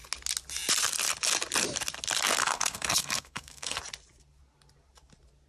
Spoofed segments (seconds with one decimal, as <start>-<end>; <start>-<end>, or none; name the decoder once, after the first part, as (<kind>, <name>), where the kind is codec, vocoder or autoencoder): 2.4-3.8 (codec, SNAC)